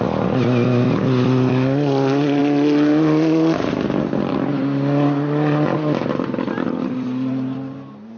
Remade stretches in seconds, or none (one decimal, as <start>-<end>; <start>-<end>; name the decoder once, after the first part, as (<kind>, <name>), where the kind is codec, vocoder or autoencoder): none